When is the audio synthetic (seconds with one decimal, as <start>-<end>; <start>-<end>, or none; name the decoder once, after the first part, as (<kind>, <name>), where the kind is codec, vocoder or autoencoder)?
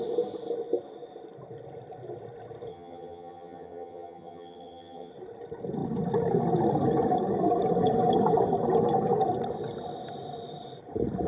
2.7-5.1 (vocoder, HiFi-GAN)